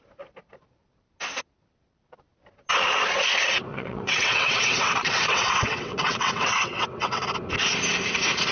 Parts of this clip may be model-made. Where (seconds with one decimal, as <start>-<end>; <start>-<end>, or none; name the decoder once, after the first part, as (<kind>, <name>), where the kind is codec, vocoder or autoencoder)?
3.7-7.3 (vocoder, WaveNeXt)